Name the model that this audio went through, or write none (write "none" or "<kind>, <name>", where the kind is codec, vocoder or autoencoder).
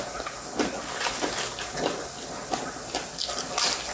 none